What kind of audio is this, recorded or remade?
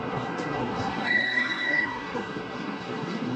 remade